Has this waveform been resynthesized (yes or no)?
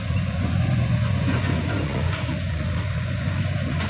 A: yes